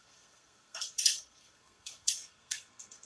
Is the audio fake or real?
fake